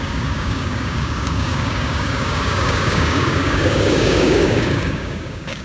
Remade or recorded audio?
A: remade